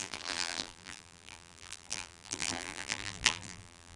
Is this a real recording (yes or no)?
no